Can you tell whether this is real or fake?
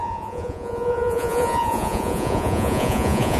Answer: fake